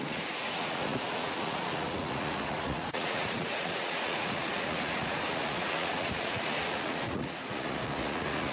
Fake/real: fake